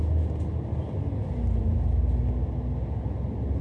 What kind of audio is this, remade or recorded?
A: recorded